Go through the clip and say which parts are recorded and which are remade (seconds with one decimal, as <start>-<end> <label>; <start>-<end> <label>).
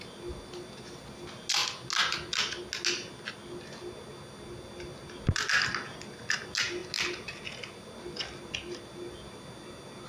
0.0-10.1 recorded